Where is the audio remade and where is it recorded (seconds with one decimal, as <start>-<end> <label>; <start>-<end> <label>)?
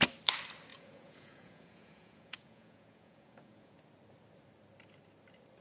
0.0-0.7 recorded; 0.7-3.8 remade; 3.8-5.6 recorded